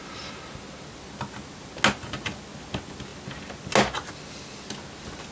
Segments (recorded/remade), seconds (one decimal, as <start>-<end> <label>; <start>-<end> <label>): 0.0-5.3 recorded